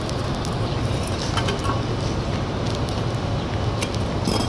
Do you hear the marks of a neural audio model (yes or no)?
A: no